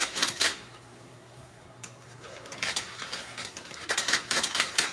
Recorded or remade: remade